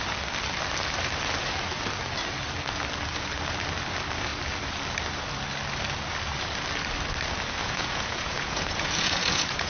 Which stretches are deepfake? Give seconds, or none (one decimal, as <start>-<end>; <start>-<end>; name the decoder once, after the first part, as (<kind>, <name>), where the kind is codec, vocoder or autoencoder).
7.6-9.7 (vocoder, Vocos)